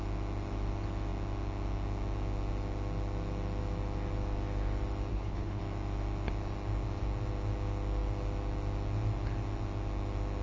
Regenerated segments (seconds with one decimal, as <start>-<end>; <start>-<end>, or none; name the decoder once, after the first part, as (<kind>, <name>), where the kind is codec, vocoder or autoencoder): 5.1-5.6 (codec, HILCodec)